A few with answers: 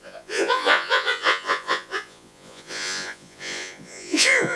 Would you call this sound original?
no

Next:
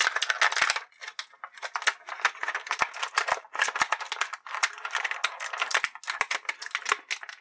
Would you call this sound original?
yes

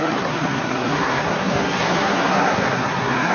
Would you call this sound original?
no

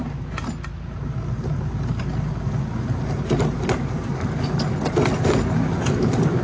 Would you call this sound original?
yes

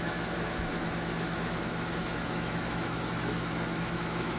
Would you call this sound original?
no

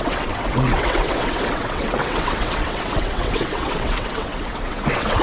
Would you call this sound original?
no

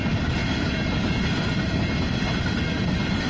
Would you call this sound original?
no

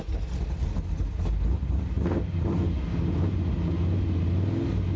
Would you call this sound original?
yes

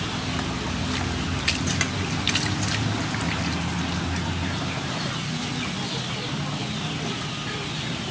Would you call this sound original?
yes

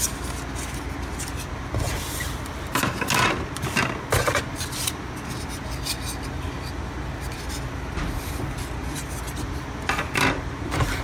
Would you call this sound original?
yes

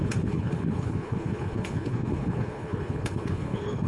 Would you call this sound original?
no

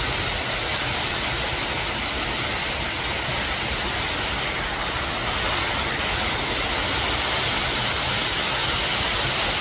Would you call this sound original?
yes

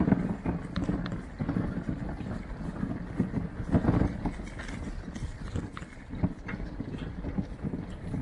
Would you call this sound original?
yes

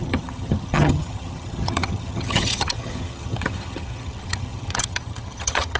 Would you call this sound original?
no